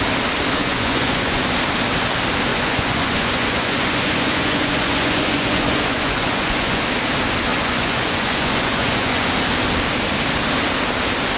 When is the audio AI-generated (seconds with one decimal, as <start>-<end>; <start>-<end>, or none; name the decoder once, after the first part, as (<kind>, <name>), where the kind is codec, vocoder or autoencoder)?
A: 0.6-1.4 (vocoder, Vocos); 2.5-6.8; 7.5-9.3